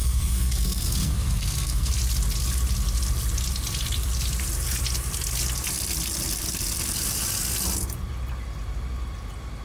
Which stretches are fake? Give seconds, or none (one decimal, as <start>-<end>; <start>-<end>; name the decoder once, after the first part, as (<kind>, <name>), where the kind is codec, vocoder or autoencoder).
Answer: 0.0-1.9 (codec, SNAC)

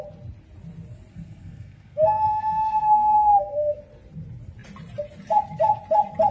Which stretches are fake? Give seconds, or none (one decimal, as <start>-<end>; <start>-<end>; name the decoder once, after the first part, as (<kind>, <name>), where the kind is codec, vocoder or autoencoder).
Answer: 1.1-3.8 (codec, SNAC)

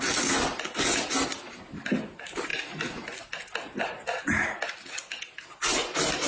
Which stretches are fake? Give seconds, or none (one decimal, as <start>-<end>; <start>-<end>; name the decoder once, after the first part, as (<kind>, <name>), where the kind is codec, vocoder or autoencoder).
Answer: none

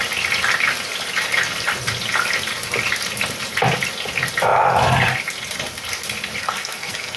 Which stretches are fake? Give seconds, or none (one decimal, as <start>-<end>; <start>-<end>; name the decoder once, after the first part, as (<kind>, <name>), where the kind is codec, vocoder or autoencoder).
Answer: 6.4-7.2 (codec, SNAC)

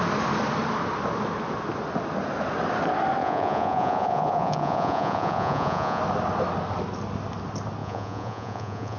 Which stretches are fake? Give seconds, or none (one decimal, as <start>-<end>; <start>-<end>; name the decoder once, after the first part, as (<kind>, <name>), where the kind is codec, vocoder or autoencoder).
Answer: 3.2-6.0 (vocoder, Vocos); 7.8-9.0

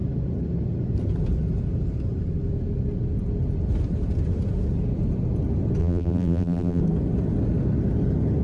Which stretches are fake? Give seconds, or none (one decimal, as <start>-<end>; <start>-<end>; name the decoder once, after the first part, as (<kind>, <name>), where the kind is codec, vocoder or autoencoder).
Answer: 5.8-6.8 (vocoder, BigVGAN v2)

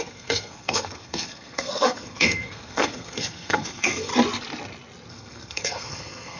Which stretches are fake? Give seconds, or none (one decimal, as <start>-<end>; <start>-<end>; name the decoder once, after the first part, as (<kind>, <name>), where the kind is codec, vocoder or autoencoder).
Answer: 0.0-4.1 (codec, SNAC); 5.1-6.4

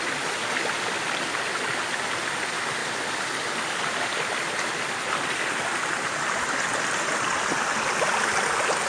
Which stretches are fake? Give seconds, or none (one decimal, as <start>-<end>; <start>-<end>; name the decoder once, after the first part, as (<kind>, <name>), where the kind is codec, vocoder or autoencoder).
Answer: none